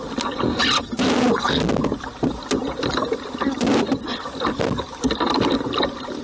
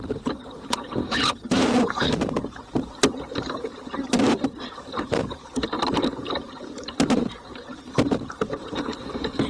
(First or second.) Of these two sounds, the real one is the first